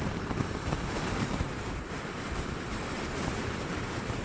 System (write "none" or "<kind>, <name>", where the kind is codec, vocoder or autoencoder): vocoder, BigVGAN v2